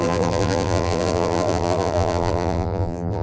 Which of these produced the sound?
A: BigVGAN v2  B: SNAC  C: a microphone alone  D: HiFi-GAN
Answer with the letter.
A